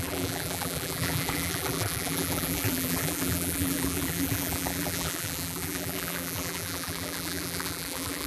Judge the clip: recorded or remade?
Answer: remade